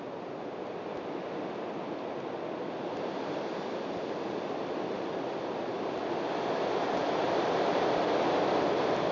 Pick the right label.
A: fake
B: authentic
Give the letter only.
B